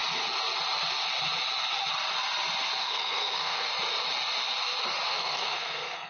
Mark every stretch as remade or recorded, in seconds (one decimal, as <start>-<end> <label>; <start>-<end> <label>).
0.0-2.8 recorded; 2.8-3.7 remade; 3.7-5.1 recorded; 5.1-6.1 remade